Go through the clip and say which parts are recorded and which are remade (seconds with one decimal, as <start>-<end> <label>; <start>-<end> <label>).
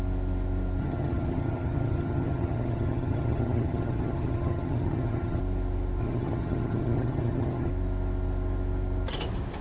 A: 0.0-0.8 recorded; 0.8-5.4 remade; 5.4-6.0 recorded; 6.0-7.7 remade; 7.7-9.6 recorded